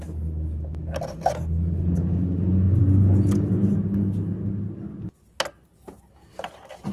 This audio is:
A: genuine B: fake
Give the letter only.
A